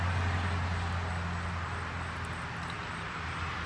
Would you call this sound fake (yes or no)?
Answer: no